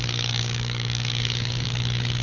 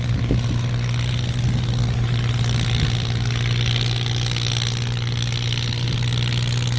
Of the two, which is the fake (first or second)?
first